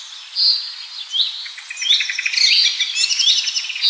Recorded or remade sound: recorded